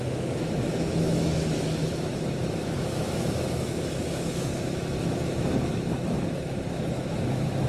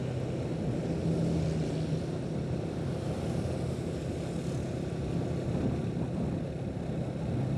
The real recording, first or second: second